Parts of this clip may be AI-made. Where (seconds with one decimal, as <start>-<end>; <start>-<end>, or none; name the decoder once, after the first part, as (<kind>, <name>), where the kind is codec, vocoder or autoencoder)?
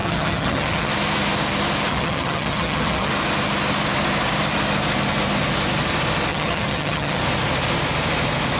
0.0-0.9 (vocoder, HiFi-GAN); 1.9-3.1; 6.3-7.2